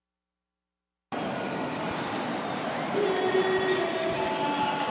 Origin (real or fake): real